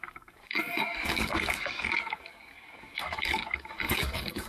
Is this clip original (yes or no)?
no